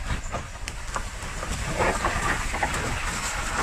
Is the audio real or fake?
real